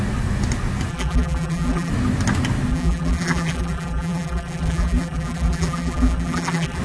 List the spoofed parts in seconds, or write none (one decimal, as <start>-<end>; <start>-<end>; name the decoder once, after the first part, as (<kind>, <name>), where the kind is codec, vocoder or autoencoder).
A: 0.9-1.9 (vocoder, BigVGAN v2); 2.7-6.8